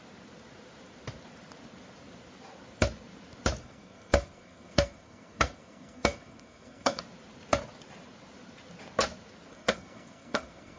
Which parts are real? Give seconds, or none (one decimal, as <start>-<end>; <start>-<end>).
0.0-3.6; 7.0-9.5